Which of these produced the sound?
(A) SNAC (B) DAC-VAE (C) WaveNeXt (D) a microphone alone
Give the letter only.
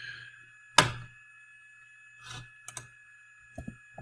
D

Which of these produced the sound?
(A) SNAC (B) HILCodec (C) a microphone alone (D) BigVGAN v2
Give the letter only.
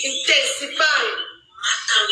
C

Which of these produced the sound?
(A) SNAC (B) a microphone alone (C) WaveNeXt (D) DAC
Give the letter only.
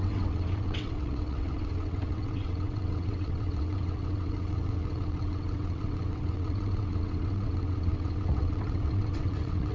C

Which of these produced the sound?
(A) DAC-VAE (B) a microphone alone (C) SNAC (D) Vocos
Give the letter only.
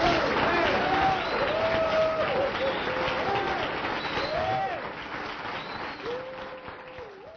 B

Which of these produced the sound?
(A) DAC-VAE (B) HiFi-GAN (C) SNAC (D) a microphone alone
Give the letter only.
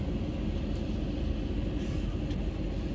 D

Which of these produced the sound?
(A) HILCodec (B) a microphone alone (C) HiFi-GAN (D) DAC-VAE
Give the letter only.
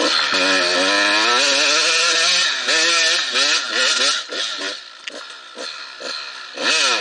B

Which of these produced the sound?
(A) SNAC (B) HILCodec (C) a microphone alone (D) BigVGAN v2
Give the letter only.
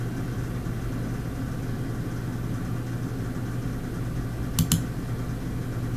C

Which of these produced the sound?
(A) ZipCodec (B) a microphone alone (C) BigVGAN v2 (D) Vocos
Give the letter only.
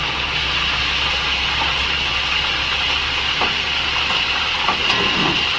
C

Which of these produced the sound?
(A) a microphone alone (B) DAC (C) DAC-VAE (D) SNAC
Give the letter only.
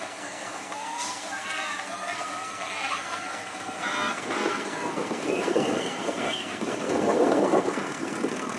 D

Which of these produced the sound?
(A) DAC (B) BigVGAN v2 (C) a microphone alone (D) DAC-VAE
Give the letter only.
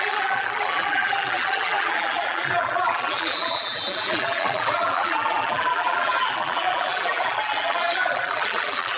B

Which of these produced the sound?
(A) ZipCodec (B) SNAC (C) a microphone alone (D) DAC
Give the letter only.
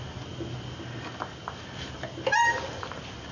C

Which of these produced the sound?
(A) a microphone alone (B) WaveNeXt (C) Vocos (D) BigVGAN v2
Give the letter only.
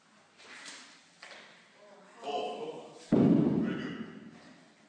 A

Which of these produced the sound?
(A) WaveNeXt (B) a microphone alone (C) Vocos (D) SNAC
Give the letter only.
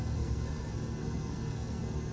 D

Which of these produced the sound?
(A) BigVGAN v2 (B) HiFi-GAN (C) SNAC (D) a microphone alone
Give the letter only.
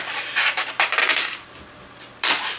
D